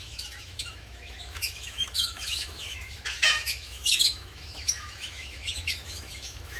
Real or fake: fake